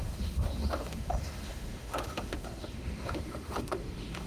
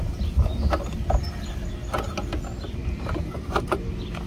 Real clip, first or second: second